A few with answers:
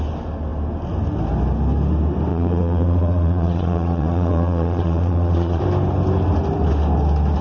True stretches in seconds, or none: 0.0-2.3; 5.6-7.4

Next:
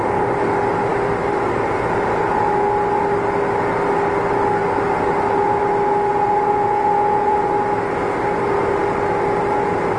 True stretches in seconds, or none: 0.0-6.1; 7.5-10.0

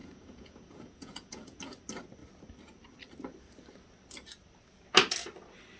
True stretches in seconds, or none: 1.6-5.8

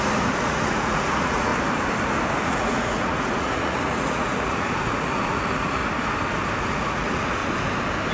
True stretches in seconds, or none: 1.5-2.4; 5.8-6.6; 7.4-8.1

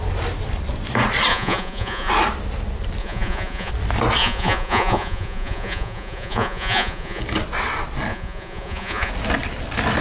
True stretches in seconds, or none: 0.0-1.3; 2.1-3.0; 3.7-4.2; 7.2-8.1; 9.1-10.0